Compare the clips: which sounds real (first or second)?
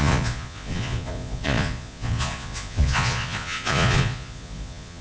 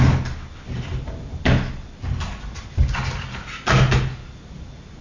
second